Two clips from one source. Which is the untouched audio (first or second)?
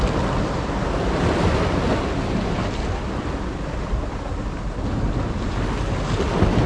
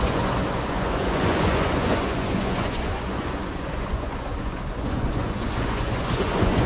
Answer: first